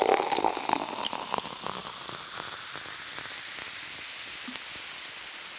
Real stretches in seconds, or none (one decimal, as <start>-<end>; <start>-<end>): 0.0-5.6